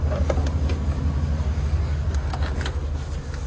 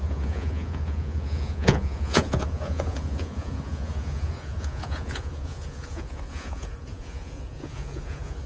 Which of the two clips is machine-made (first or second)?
second